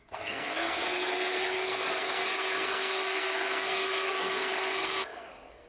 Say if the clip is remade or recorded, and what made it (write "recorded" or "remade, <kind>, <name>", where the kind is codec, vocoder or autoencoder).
remade, codec, SNAC